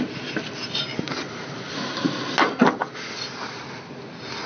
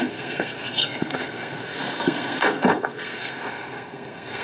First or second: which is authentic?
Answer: first